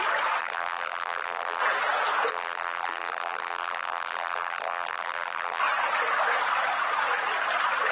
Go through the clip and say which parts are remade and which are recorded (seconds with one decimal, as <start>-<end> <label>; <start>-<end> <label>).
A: 0.0-0.4 recorded; 0.4-1.6 remade; 1.6-2.3 recorded; 2.3-5.6 remade; 5.6-7.9 recorded